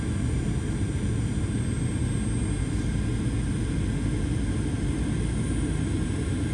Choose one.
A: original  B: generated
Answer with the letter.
A